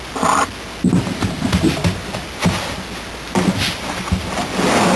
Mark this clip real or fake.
real